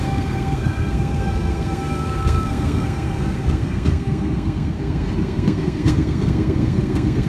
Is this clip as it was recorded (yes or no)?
no